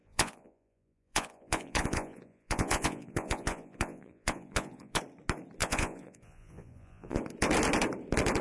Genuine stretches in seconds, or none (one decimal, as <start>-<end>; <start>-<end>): 5.0-5.6; 7.2-8.4